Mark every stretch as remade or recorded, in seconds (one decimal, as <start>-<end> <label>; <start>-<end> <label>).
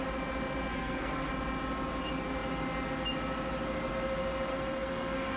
0.0-0.7 recorded; 0.7-1.3 remade; 1.3-4.5 recorded; 4.5-5.4 remade